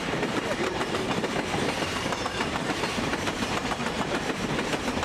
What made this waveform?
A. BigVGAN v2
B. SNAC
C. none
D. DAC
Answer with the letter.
A